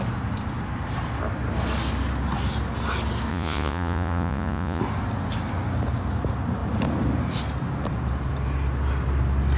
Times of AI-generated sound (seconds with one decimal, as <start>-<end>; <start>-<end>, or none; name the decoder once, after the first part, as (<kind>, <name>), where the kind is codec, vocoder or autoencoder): 3.3-4.8 (vocoder, Vocos)